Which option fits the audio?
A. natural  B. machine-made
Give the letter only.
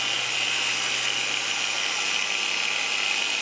A